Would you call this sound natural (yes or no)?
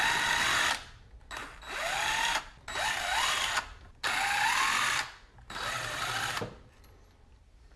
yes